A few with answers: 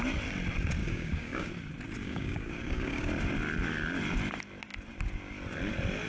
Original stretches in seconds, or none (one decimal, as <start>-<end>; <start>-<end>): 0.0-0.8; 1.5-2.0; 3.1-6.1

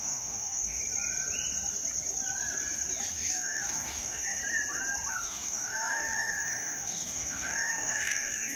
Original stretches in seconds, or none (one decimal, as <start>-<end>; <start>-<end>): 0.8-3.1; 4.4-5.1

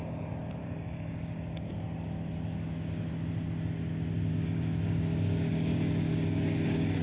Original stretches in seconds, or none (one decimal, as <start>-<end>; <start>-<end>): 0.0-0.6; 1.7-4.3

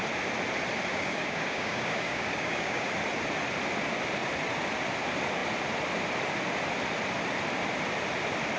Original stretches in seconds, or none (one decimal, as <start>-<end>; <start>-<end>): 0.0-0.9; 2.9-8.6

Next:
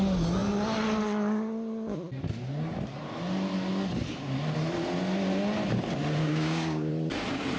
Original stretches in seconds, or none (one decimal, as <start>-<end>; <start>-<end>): 0.0-6.2; 6.9-7.6